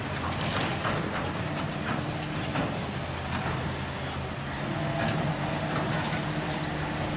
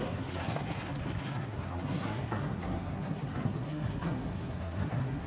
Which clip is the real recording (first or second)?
first